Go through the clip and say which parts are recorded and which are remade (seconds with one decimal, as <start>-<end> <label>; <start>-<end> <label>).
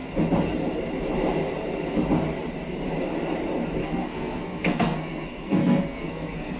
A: 0.0-3.8 recorded; 3.8-6.6 remade